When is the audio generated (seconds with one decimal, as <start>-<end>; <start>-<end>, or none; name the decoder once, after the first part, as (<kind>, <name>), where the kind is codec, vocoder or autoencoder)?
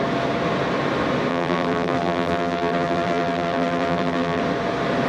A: 1.3-4.4 (vocoder, BigVGAN v2)